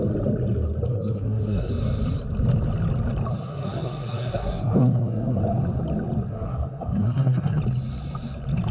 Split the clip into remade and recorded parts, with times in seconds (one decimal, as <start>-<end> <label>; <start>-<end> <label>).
0.0-0.9 recorded; 0.9-1.7 remade; 1.7-3.4 recorded; 3.4-5.4 remade; 5.4-6.3 recorded; 6.3-7.6 remade; 7.6-8.7 recorded